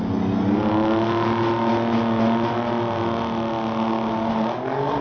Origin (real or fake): real